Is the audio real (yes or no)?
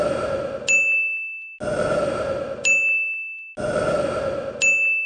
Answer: yes